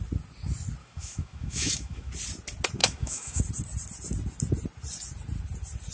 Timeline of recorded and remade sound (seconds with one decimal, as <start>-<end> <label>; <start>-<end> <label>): 0.0-0.8 recorded; 0.8-2.1 remade; 2.1-2.8 recorded; 2.8-3.4 remade; 3.4-5.9 recorded